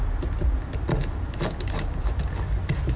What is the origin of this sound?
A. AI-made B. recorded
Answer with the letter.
B